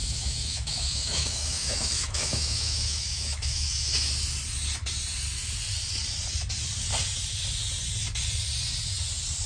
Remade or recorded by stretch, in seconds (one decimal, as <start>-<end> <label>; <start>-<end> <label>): 0.0-4.1 remade; 4.1-9.5 recorded